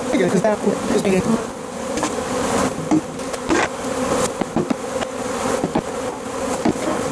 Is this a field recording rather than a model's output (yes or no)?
yes